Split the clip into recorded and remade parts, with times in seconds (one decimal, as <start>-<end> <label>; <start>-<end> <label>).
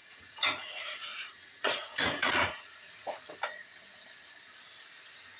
0.0-3.2 remade; 3.2-5.4 recorded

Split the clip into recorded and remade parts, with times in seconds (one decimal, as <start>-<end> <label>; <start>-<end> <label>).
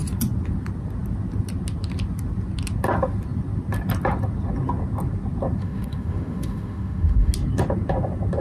0.0-5.6 recorded; 5.6-7.3 remade; 7.3-8.4 recorded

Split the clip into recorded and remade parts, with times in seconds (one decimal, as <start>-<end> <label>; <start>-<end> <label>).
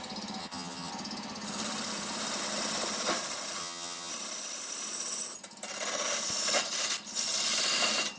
0.0-0.4 recorded; 0.4-0.9 remade; 0.9-3.6 recorded; 3.6-4.1 remade; 4.1-8.2 recorded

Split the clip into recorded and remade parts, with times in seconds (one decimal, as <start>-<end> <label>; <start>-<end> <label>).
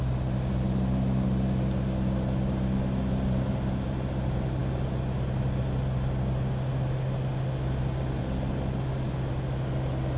0.0-10.2 recorded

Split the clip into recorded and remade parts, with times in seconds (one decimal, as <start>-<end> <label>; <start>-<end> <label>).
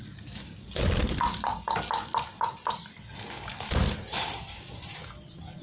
0.0-5.6 recorded